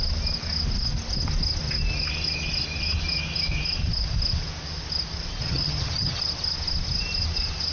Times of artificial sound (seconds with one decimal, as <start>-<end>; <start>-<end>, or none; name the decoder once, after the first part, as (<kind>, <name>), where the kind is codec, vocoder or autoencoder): 5.4-6.2 (vocoder, HiFi-GAN)